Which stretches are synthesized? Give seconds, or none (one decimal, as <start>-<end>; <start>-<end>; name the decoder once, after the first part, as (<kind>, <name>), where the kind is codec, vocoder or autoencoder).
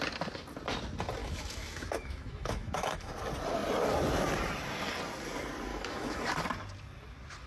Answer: 1.2-3.1 (autoencoder, DAC-VAE); 5.7-6.2